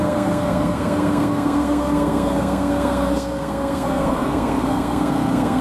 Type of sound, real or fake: fake